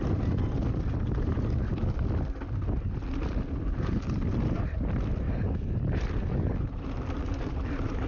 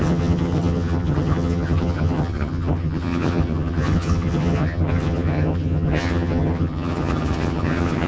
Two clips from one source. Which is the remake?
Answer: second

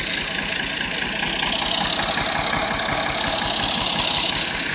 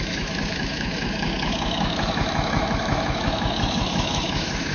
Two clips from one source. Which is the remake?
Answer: second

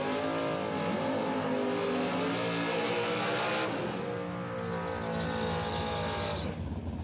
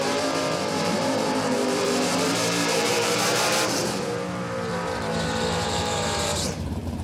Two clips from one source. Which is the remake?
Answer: second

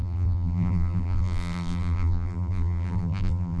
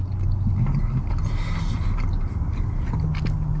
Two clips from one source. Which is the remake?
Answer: first